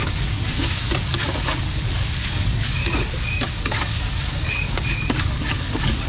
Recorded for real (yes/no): no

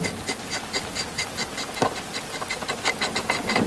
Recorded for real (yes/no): yes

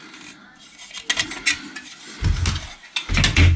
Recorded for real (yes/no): yes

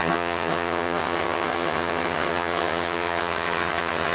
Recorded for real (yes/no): no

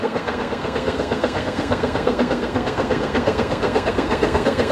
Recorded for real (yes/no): no